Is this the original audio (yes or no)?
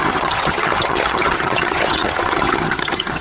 no